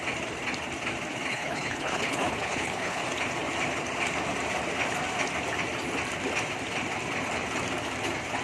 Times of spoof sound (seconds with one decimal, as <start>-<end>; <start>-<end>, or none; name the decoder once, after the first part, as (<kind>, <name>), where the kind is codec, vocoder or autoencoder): 1.3-3.0 (codec, HILCodec)